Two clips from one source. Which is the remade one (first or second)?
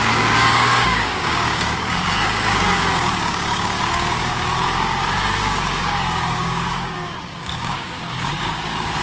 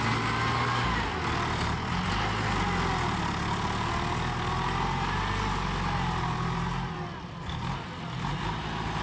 first